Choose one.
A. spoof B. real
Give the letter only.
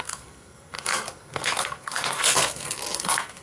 A